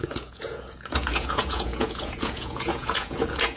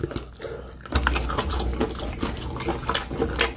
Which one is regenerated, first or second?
first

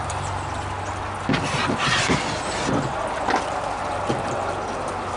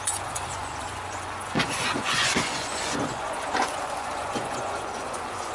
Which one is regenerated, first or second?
second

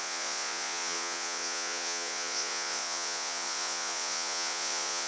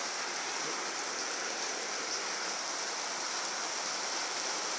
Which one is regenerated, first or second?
first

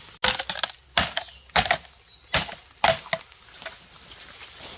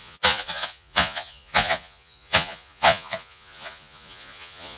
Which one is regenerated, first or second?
second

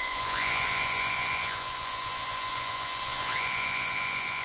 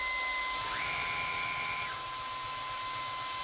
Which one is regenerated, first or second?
first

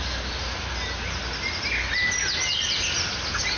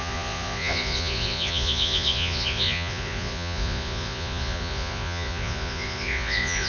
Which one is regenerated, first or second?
second